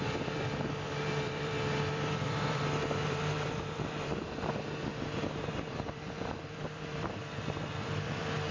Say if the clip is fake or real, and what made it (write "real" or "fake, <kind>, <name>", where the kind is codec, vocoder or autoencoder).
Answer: fake, vocoder, BigVGAN v2